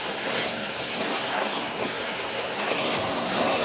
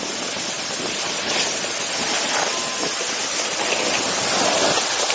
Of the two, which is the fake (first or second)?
first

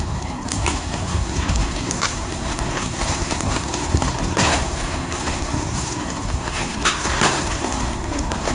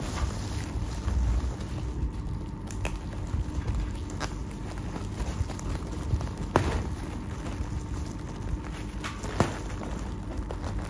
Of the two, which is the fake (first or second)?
first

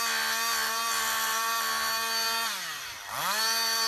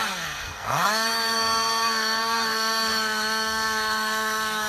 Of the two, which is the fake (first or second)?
second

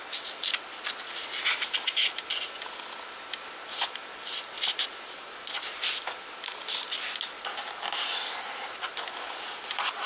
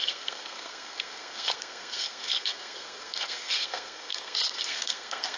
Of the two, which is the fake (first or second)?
second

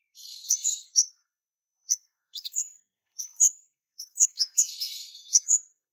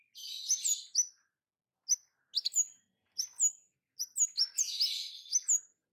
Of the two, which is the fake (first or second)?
first